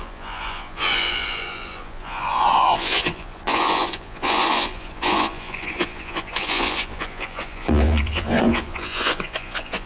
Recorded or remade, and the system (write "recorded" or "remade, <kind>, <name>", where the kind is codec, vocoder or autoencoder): remade, vocoder, Vocos